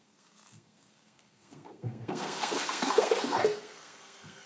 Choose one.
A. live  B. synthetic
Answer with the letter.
B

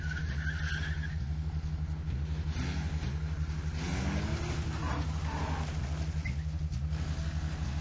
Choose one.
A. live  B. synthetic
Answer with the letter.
A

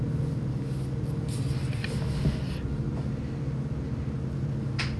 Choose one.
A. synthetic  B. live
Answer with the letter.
B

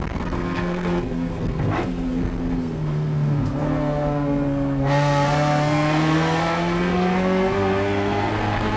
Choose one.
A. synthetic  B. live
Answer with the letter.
A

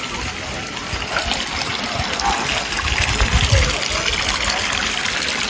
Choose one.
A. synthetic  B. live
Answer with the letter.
B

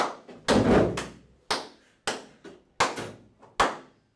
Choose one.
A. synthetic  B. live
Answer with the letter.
B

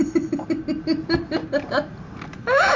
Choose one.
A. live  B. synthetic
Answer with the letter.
A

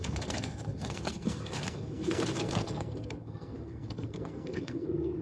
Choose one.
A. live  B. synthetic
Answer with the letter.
B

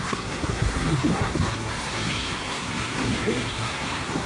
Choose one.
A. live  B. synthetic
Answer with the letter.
B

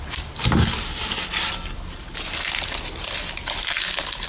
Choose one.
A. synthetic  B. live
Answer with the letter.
B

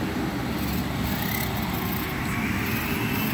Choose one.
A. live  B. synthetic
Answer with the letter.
A